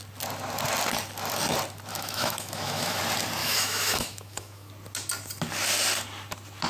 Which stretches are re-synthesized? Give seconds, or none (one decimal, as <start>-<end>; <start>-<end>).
1.9-3.0; 3.4-4.7